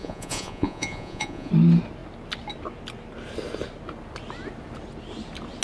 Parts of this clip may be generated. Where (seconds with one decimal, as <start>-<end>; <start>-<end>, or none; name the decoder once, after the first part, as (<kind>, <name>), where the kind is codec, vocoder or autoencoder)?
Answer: 0.0-1.5 (vocoder, Vocos)